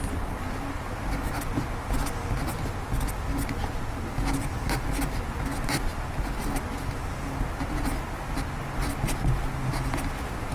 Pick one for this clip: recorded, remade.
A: recorded